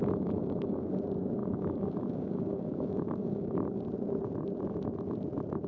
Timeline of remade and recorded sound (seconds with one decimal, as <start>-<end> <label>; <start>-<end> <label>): 0.0-0.9 remade; 0.9-1.4 recorded; 1.4-3.8 remade; 3.8-5.7 recorded